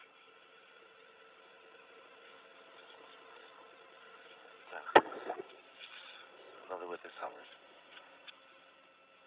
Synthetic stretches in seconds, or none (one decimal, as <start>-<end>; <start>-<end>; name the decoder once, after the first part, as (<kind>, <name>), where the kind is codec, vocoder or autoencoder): 7.2-8.3 (vocoder, Vocos)